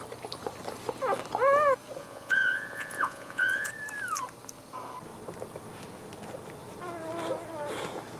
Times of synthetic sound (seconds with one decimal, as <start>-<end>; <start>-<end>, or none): 2.0-3.7